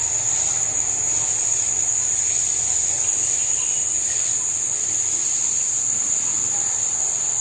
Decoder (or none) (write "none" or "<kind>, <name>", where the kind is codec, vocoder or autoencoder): none